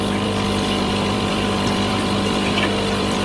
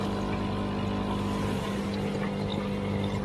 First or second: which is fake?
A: first